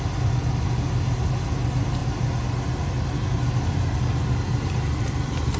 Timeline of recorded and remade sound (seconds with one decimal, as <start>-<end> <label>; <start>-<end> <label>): 0.0-5.6 recorded